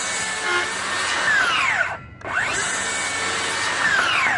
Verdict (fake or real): real